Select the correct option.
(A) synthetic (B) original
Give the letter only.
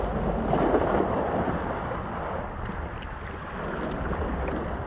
B